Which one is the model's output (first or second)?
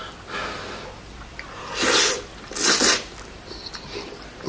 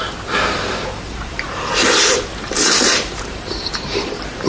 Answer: second